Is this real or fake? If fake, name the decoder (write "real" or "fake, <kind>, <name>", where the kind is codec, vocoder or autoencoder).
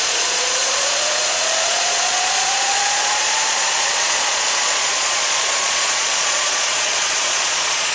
fake, vocoder, Vocos